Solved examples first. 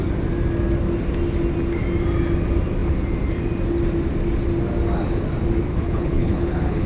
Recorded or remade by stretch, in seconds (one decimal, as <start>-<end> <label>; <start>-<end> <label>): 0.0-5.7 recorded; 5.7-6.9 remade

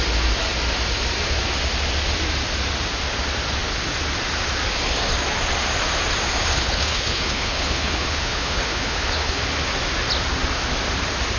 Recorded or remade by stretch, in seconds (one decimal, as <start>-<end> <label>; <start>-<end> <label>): 0.0-6.4 recorded; 6.4-9.4 remade; 9.4-11.4 recorded

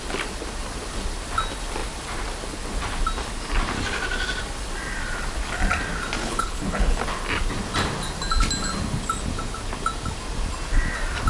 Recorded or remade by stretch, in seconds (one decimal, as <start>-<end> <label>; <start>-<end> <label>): 0.0-6.2 recorded; 6.2-7.0 remade; 7.0-11.3 recorded